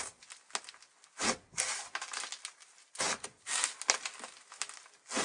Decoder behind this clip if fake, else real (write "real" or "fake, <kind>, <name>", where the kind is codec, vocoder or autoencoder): real